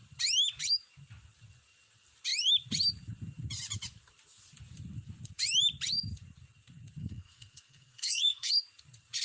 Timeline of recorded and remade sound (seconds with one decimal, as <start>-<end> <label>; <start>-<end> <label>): 0.0-7.0 recorded; 7.0-8.5 remade; 8.5-9.2 recorded